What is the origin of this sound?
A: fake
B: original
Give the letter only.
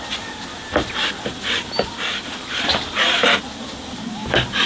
B